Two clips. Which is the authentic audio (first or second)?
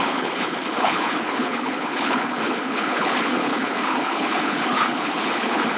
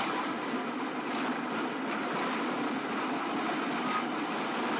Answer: second